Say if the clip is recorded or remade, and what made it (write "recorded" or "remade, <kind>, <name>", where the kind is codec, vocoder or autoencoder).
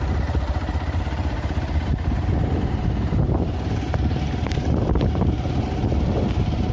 remade, vocoder, BigVGAN v2